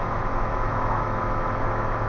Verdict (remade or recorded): remade